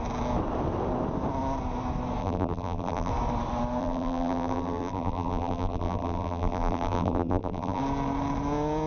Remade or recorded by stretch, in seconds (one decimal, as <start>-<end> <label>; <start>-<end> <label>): 0.0-2.2 recorded; 2.2-3.1 remade; 3.1-3.8 recorded; 3.8-7.8 remade; 7.8-8.9 recorded